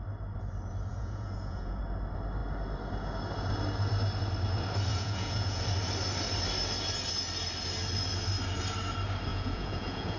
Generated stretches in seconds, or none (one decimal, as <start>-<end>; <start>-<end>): 0.9-1.8; 4.9-5.6; 9.3-10.2